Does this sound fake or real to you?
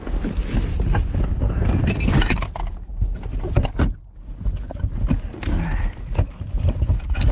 real